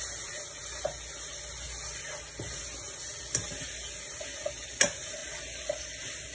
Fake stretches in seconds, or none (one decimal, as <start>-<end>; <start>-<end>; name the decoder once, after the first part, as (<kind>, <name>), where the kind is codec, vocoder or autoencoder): none